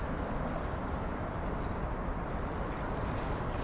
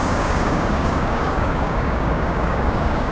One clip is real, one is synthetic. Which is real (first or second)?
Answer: first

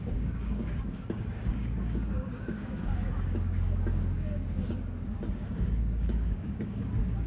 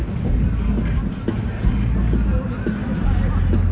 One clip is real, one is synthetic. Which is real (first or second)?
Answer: second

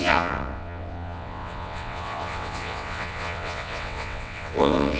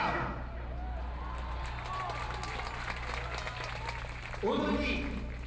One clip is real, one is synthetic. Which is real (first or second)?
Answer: second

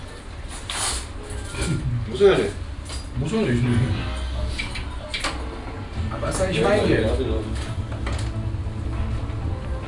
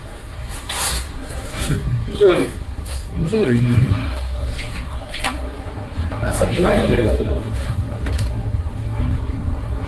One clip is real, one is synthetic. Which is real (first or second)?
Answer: first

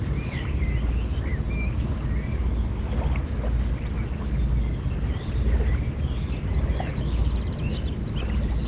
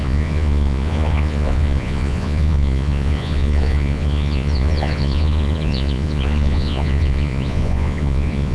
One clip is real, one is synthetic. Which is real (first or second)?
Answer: first